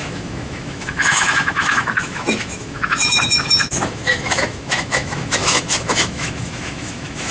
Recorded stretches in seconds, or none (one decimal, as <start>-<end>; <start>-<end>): none